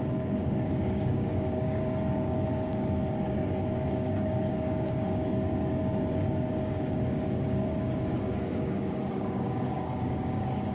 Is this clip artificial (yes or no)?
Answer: yes